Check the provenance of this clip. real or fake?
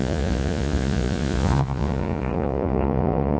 fake